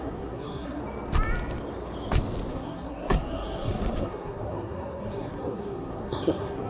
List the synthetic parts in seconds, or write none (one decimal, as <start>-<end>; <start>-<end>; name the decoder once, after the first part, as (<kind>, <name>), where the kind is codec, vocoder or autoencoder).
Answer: 0.0-0.8 (codec, SNAC); 2.5-6.7

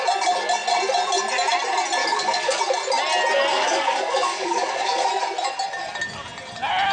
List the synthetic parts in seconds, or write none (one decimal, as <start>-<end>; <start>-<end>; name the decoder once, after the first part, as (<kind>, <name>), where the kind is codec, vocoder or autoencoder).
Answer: 2.0-2.6 (codec, DAC); 3.5-5.1

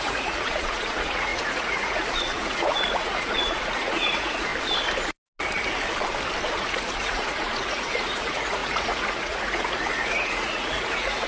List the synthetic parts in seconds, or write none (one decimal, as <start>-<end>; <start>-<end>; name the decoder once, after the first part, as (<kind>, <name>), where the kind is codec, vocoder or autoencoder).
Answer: 0.0-4.5 (vocoder, Vocos); 6.5-11.3

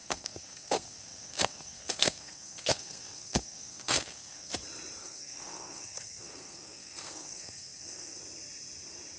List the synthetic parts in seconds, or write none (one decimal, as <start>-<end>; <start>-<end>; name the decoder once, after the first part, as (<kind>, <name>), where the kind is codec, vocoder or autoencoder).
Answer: 0.0-4.5 (codec, SNAC); 5.0-8.2

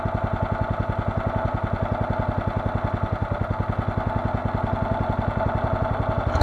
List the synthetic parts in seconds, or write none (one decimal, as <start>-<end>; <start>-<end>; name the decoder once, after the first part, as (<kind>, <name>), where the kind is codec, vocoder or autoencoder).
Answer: none

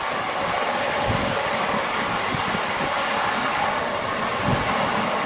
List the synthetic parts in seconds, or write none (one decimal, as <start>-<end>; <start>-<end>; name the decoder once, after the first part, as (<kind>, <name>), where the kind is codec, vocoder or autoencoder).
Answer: none